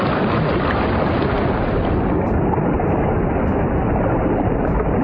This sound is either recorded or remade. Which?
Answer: recorded